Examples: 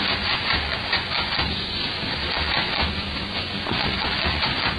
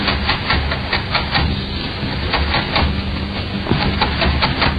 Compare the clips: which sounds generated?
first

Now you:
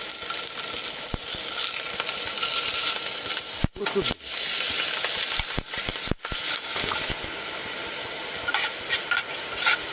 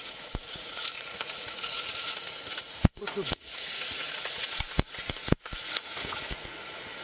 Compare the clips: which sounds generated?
second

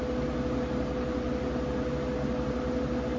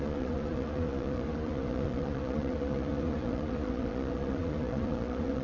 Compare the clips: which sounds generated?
second